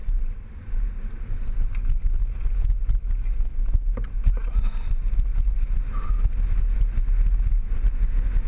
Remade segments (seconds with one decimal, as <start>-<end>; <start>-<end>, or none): 0.0-1.2